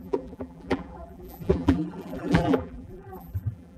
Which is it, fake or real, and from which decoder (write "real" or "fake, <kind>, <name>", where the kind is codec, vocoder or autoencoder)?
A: fake, vocoder, BigVGAN v2